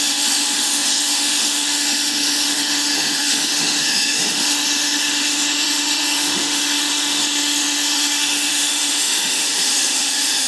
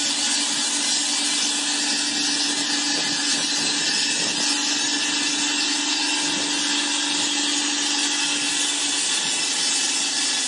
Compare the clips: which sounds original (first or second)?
second